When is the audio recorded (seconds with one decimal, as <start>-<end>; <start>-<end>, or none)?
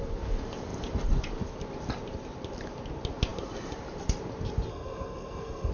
0.0-4.7